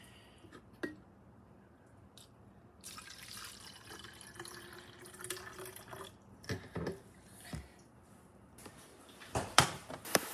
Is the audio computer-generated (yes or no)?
no